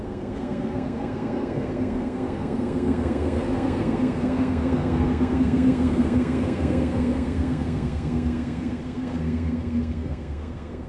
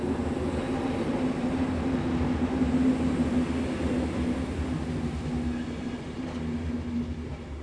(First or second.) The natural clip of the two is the second